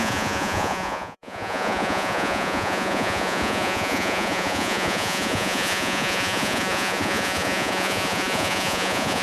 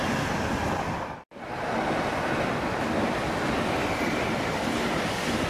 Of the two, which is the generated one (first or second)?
first